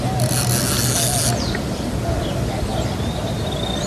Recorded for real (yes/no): yes